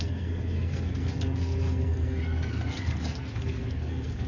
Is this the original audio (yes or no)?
no